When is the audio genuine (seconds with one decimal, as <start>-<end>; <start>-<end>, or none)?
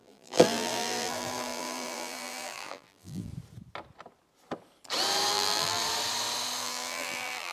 3.3-5.3; 5.8-6.6